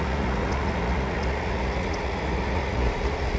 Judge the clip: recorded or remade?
remade